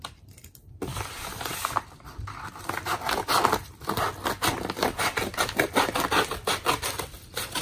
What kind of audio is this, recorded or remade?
remade